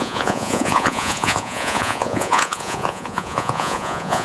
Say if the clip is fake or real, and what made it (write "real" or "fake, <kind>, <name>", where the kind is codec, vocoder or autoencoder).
fake, vocoder, Vocos